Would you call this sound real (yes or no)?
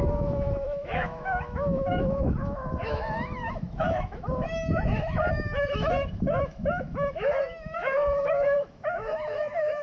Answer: no